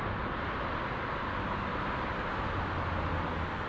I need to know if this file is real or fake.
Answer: real